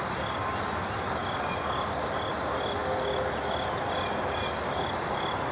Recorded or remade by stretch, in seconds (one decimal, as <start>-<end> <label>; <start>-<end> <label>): 0.0-5.5 recorded